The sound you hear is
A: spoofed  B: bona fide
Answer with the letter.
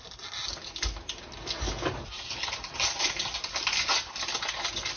B